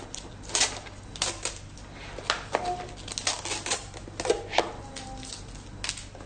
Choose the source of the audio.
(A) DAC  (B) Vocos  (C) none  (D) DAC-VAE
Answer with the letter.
C